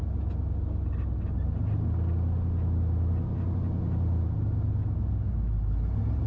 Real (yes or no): yes